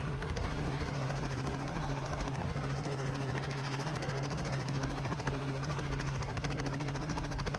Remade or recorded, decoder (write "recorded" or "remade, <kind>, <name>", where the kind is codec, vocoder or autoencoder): remade, codec, SNAC